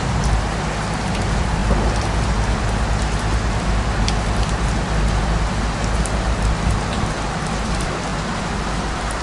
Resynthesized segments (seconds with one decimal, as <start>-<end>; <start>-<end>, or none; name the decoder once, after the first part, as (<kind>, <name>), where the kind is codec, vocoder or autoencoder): none